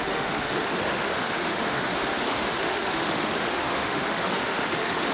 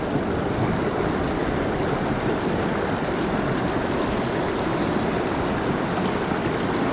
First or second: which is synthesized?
first